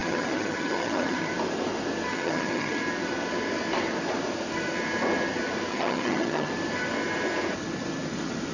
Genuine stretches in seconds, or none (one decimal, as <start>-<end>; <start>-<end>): 1.3-2.1; 2.8-5.7; 6.5-8.5